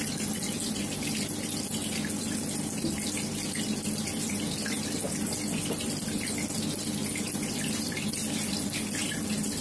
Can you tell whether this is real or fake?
real